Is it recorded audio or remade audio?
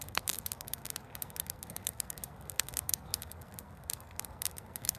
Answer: remade